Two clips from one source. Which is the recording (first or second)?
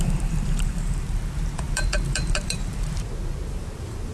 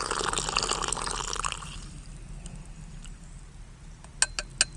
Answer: second